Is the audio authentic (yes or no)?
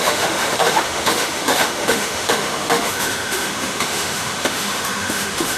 no